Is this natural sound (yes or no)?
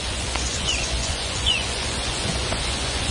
no